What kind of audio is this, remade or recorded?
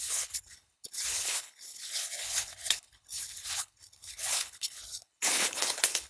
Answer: remade